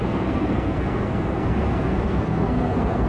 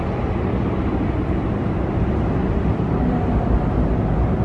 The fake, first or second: first